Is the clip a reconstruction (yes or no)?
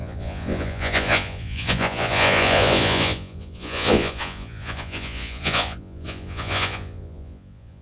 yes